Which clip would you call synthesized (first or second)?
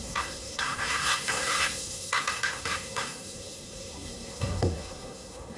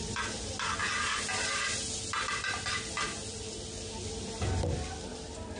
first